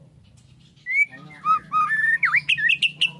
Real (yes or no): yes